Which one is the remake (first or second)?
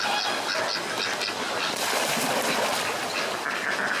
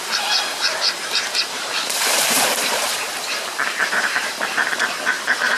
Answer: second